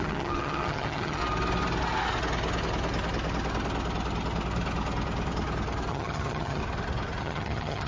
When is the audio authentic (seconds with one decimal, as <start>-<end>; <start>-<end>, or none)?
1.2-5.9; 6.6-7.2

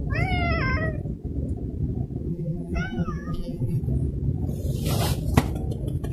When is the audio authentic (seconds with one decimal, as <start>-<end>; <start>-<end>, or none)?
0.0-2.3; 3.8-6.1

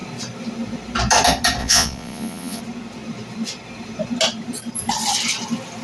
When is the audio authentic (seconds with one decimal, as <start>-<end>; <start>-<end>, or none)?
0.0-1.6; 2.6-5.8

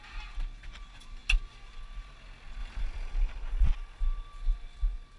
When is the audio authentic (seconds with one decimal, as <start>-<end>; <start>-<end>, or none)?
0.0-2.6; 3.7-5.2

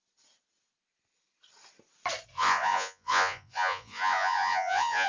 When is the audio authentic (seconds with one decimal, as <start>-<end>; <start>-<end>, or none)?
0.0-2.3

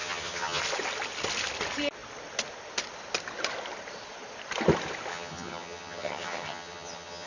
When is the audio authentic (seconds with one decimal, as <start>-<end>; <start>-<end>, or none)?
0.6-5.1